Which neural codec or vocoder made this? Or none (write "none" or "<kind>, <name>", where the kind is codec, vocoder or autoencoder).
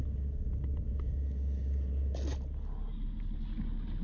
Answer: none